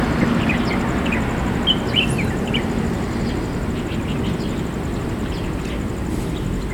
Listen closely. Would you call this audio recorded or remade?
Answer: recorded